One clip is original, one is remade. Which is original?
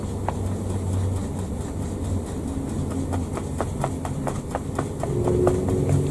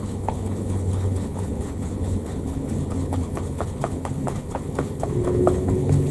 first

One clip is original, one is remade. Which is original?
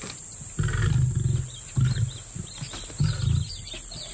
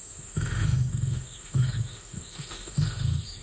first